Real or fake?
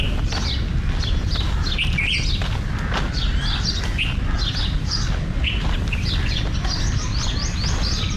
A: real